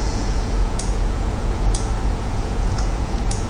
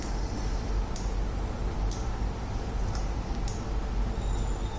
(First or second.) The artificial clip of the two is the first